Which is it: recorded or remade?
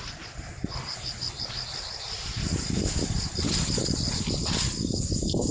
recorded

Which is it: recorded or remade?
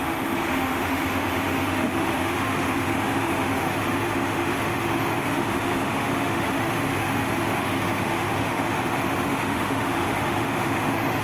remade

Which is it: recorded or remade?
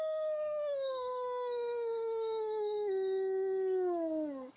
remade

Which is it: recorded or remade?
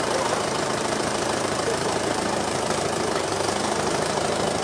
remade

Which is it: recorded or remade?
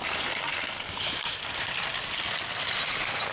recorded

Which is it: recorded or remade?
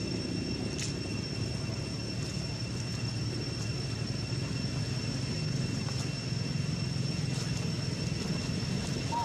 recorded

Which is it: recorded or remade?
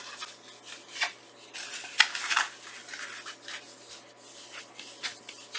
recorded